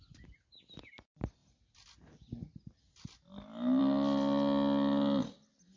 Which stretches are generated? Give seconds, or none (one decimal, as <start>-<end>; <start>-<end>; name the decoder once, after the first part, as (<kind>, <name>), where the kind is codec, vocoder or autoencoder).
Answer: none